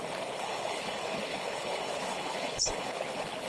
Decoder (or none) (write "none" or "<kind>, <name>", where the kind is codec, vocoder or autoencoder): codec, HILCodec